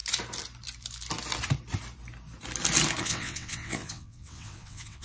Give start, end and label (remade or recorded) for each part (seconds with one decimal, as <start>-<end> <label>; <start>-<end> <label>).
0.0-3.0 recorded; 3.0-5.0 remade